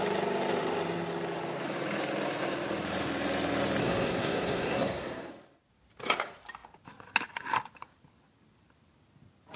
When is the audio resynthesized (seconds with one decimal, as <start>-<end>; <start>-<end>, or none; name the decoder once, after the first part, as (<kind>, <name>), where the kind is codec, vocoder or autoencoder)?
3.8-5.3 (codec, SNAC)